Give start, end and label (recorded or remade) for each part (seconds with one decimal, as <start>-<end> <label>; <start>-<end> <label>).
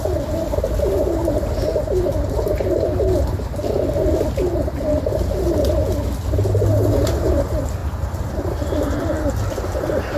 0.0-7.8 recorded; 7.8-9.0 remade; 9.0-10.2 recorded